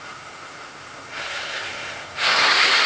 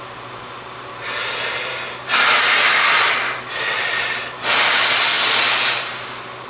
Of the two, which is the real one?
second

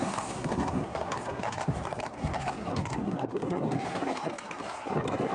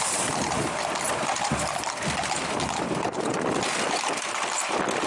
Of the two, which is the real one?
second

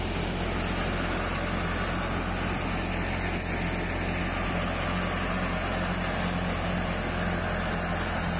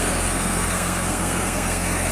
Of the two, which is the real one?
first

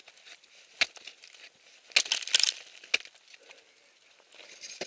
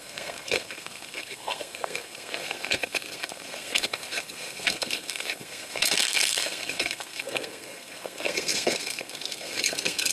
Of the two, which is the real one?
first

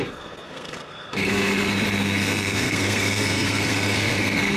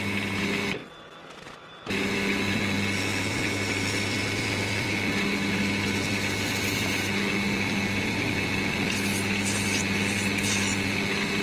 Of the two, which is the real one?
second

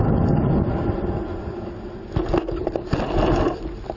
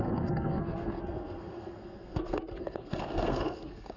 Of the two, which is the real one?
first